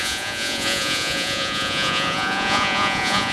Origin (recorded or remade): remade